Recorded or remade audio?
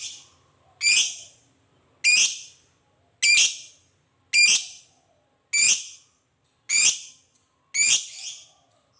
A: recorded